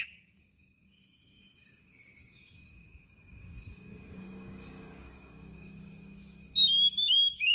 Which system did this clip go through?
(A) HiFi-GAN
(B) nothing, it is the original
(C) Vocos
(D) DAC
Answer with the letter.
D